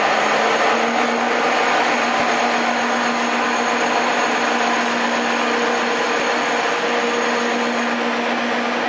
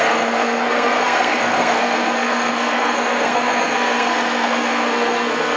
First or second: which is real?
first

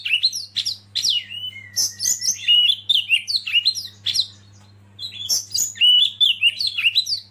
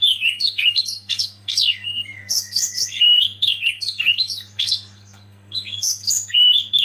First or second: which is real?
first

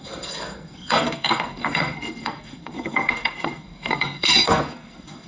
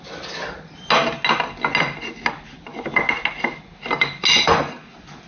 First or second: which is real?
second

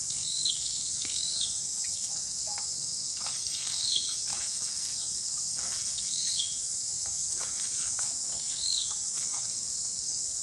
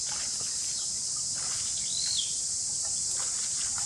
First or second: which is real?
second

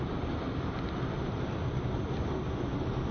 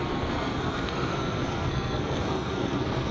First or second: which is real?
first